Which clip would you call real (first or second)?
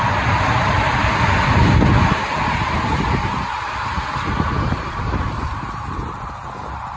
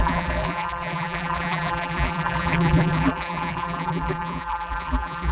first